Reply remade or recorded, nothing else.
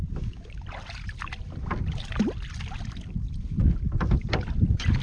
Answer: recorded